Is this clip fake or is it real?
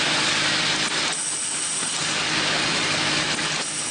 real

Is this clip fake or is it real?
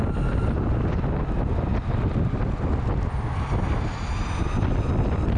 real